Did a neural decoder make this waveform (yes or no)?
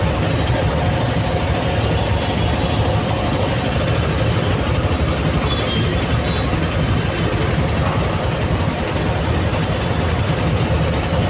no